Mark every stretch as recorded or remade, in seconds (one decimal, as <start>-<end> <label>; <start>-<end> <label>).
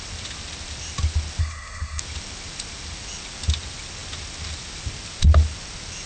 0.0-1.4 recorded; 1.4-2.0 remade; 2.0-6.1 recorded